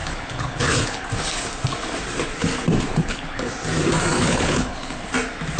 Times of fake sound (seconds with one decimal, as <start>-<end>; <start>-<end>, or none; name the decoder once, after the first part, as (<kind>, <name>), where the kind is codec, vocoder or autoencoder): 0.0-1.0 (codec, HILCodec); 2.9-3.5; 4.1-5.1